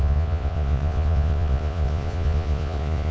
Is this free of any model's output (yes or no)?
no